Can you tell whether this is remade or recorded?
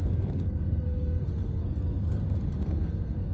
remade